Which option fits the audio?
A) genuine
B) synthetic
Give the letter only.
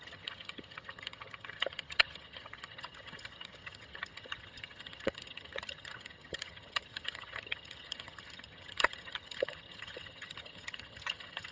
B